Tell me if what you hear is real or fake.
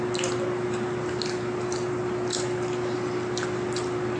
real